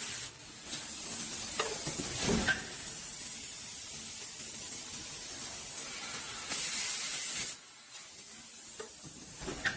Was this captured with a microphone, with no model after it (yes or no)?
yes